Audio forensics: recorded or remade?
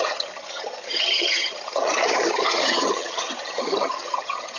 remade